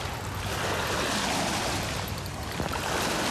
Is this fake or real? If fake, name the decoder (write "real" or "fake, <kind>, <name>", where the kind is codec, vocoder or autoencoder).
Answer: real